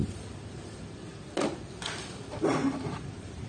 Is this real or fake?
real